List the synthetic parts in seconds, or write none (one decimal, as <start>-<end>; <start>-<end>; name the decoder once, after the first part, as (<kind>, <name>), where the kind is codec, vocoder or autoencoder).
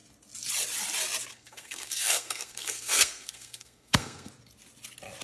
1.3-4.3 (codec, SNAC)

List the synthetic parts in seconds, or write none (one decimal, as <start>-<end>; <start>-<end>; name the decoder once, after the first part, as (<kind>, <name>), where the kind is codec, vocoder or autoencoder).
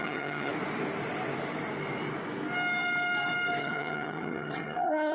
0.0-0.5 (vocoder, HiFi-GAN); 3.6-5.1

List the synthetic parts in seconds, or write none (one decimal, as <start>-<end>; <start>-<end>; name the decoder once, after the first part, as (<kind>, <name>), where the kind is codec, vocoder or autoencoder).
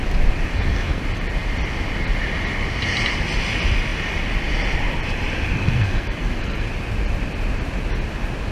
0.5-1.0 (codec, SNAC); 5.6-6.7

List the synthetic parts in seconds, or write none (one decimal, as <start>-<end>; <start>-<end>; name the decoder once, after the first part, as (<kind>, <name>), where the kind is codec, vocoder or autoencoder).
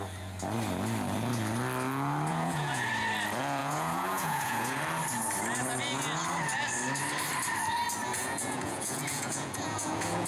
2.3-2.9 (vocoder, Vocos); 3.6-4.8; 8.1-10.3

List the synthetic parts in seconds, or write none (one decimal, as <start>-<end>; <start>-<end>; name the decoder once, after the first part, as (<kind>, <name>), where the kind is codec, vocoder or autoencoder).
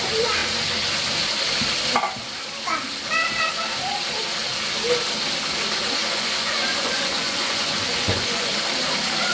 6.0-8.5 (vocoder, Vocos)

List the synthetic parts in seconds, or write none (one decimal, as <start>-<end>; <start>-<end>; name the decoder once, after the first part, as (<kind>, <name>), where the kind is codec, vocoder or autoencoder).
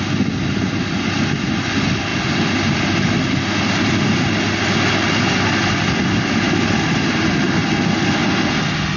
none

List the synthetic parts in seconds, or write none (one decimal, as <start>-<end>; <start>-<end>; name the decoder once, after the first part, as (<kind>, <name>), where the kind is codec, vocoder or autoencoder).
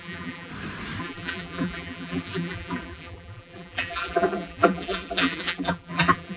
0.0-0.5 (vocoder, BigVGAN v2); 1.0-6.4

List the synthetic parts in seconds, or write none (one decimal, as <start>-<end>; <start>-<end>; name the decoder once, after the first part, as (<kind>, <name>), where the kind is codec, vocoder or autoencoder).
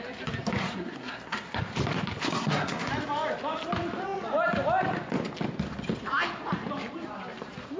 0.6-1.6 (codec, SNAC); 2.2-2.9